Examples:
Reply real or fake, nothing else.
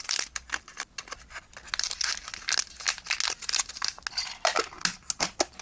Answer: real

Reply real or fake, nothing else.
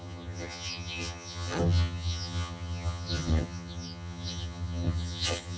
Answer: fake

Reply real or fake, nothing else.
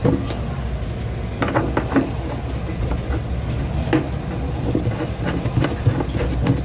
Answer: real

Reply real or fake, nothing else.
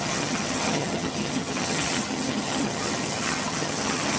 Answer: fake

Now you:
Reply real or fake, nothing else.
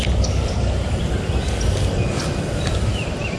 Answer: real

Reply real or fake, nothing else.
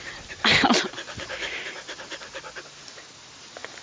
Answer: real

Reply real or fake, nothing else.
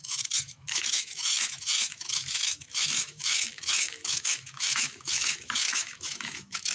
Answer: fake